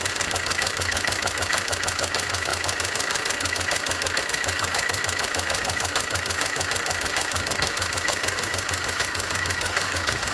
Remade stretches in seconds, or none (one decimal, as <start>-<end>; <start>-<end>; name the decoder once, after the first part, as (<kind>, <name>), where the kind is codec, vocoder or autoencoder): 0.0-10.3 (autoencoder, DAC-VAE)